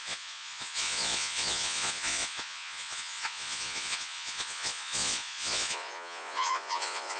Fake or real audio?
fake